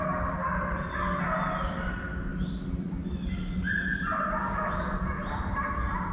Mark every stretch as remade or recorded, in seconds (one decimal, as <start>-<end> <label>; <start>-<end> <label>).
0.0-6.1 recorded